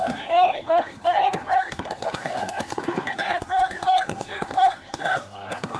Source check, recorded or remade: remade